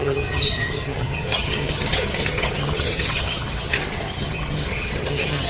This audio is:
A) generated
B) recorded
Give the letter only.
A